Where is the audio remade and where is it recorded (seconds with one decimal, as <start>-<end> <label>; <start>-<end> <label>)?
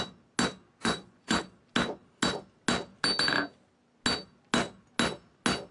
0.0-0.8 recorded; 0.8-1.4 remade; 1.4-5.7 recorded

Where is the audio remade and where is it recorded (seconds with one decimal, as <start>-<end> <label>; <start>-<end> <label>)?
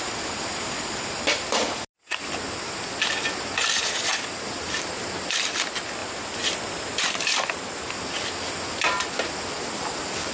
0.0-4.1 recorded; 4.1-4.9 remade; 4.9-6.0 recorded; 6.0-9.1 remade; 9.1-10.3 recorded